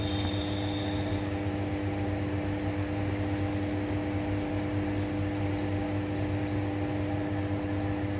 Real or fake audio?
real